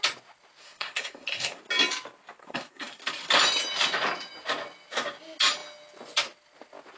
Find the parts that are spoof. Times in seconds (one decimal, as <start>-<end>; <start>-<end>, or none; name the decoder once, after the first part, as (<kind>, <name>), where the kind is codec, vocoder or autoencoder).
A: 0.6-1.6 (codec, SNAC); 2.4-3.0